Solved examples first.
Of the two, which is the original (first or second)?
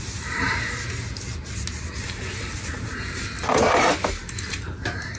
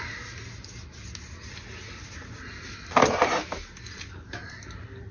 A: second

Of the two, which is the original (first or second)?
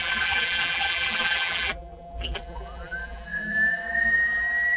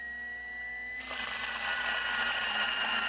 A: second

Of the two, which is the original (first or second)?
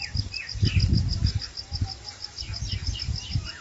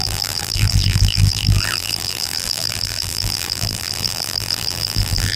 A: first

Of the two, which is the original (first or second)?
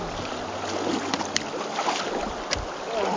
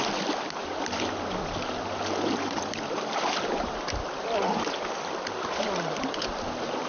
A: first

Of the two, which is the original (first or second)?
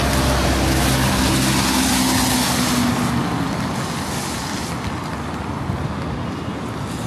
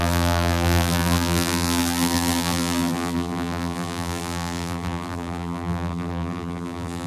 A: first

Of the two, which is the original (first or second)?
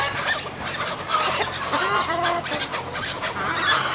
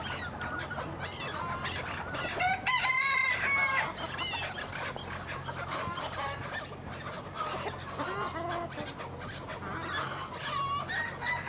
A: second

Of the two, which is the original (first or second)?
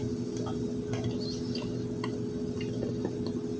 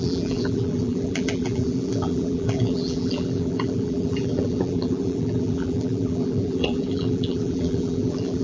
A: first